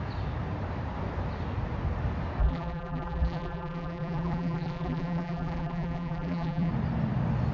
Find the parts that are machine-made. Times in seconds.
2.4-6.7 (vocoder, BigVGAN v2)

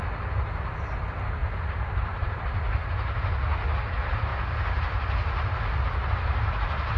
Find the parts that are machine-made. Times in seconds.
1.4-2.4 (vocoder, BigVGAN v2)

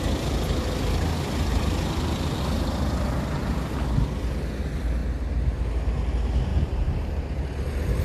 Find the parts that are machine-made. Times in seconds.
1.5-2.4 (vocoder, BigVGAN v2); 6.5-8.0

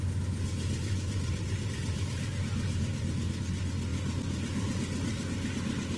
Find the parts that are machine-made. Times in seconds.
0.8-3.4 (vocoder, BigVGAN v2)

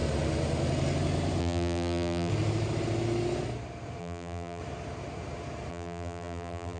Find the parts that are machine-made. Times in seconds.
1.4-2.3 (vocoder, BigVGAN v2); 4.0-4.6; 5.7-6.8

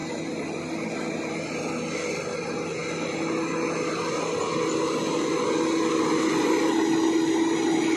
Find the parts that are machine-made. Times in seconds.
none

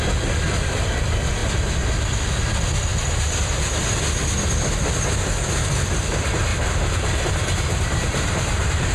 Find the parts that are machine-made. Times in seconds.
6.5-8.9 (vocoder, BigVGAN v2)

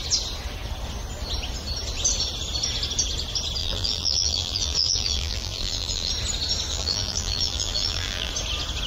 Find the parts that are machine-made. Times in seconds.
3.6-6.1 (vocoder, BigVGAN v2); 6.7-8.3